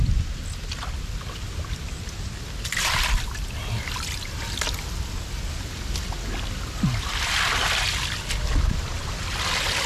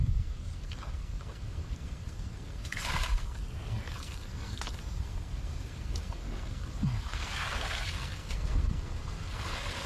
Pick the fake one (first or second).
second